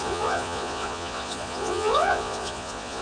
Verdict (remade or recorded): remade